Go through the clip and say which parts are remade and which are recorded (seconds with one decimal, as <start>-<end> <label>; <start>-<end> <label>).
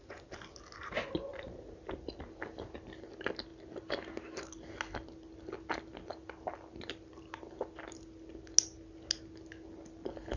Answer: 0.0-10.4 recorded